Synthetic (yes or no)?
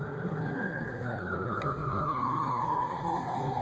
yes